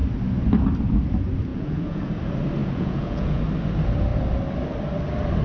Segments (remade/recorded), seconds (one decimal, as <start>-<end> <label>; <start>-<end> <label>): 0.0-1.5 recorded; 1.5-2.1 remade; 2.1-2.6 recorded; 2.6-3.4 remade; 3.4-5.4 recorded